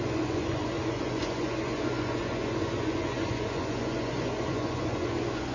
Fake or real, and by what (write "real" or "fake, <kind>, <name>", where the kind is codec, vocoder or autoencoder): fake, vocoder, Vocos